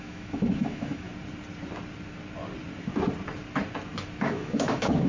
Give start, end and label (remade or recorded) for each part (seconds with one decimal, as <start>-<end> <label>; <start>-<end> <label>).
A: 0.0-1.1 remade; 1.1-4.2 recorded; 4.2-5.1 remade